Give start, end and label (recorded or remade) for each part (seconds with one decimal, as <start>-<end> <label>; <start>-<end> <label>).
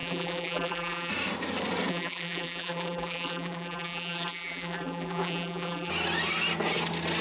0.0-1.1 remade; 1.1-1.9 recorded; 1.9-5.9 remade; 5.9-7.2 recorded